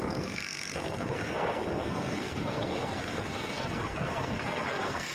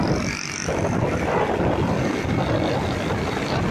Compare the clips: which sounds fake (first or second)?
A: first